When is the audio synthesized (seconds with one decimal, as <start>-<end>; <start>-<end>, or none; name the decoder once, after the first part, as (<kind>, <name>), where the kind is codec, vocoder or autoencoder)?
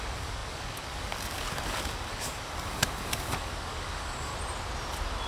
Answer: 0.0-4.3 (codec, DAC)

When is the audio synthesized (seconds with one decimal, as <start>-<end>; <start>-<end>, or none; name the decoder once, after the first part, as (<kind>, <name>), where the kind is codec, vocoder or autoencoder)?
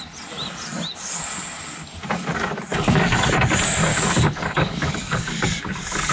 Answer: 2.7-3.3 (codec, DAC); 3.9-6.1